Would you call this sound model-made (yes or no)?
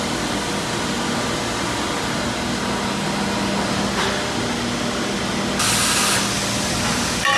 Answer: no